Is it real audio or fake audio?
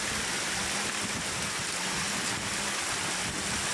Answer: real